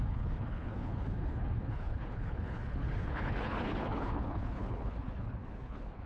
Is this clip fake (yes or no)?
yes